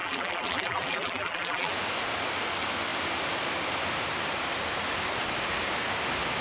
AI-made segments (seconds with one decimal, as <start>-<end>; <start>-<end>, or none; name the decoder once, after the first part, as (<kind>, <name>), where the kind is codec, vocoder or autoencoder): 0.0-1.7 (vocoder, BigVGAN v2)